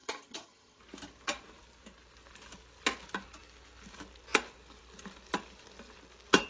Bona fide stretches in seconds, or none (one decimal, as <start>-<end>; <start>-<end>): 0.8-6.5